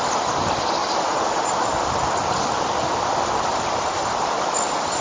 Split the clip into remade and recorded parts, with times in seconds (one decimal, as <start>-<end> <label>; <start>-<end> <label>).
0.0-5.0 recorded